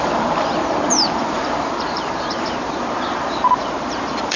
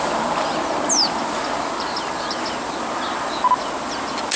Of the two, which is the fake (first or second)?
first